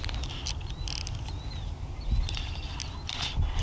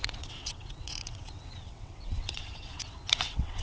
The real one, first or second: first